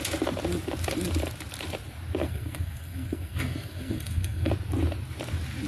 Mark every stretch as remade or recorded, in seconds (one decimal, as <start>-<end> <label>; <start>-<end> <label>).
0.0-2.2 recorded; 2.2-4.5 remade; 4.5-5.7 recorded